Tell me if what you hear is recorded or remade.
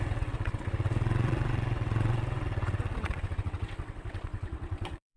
remade